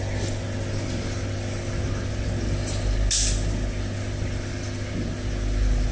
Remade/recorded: recorded